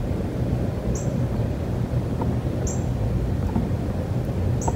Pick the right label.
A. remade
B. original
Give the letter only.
B